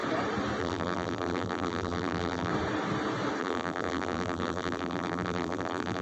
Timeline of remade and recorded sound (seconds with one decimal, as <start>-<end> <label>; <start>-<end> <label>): 0.0-0.6 recorded; 0.6-2.5 remade; 2.5-3.4 recorded; 3.4-6.0 remade